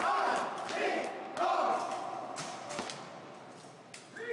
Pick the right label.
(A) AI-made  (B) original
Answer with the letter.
B